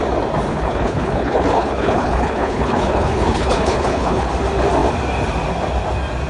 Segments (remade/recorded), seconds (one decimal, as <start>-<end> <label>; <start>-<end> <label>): 0.0-0.5 recorded; 0.5-4.3 remade; 4.3-6.3 recorded